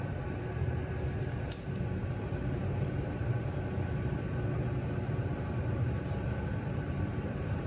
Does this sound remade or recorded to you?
remade